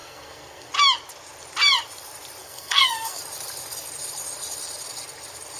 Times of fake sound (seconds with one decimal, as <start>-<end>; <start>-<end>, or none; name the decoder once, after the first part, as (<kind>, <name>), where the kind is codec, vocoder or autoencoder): 0.0-0.7 (codec, SNAC); 2.4-3.2